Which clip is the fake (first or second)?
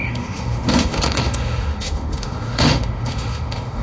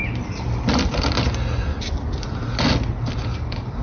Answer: first